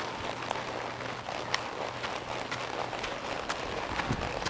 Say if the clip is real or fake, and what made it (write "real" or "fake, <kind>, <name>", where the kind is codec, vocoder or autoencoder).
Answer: real